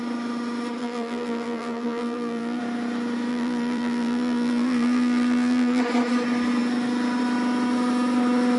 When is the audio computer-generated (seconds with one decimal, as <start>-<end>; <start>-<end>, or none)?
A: 0.8-2.6; 3.3-5.8